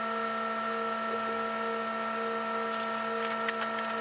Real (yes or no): yes